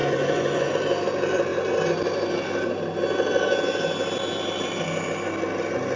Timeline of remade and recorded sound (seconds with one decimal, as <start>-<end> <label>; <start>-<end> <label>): 0.0-0.7 remade; 0.7-6.0 recorded